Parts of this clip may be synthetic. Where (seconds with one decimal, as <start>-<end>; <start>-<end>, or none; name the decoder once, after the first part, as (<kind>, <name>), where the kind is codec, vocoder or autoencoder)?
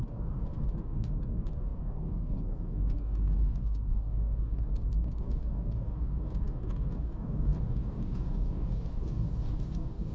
0.0-10.1 (codec, DAC)